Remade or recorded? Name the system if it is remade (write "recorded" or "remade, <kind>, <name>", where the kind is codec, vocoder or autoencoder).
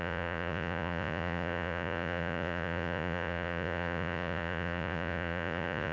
remade, vocoder, Vocos